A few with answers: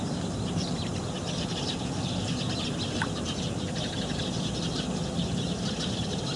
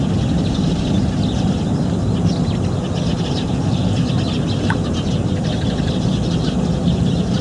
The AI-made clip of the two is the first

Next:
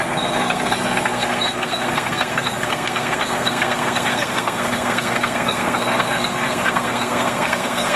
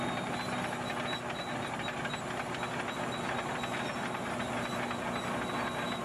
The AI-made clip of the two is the first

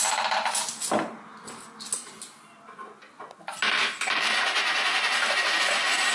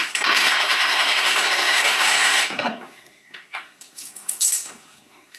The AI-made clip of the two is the second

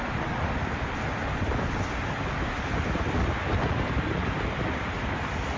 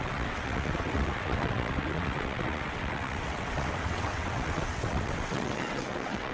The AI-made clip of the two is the second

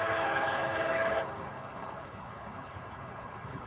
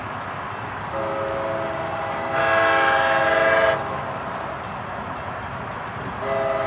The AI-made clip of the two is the first